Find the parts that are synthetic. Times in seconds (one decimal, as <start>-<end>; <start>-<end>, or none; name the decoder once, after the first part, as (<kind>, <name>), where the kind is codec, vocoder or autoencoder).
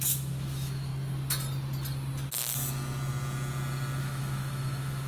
0.0-0.9 (autoencoder, DAC-VAE); 4.0-5.1